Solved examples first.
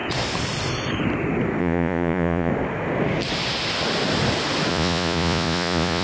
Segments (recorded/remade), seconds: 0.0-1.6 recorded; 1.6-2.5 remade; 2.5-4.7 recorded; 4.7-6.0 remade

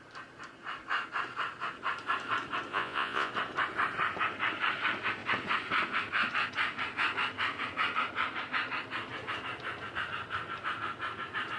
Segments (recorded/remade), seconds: 0.0-2.7 recorded; 2.7-3.3 remade; 3.3-11.6 recorded

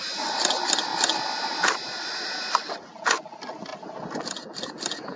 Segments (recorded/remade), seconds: 0.0-5.2 recorded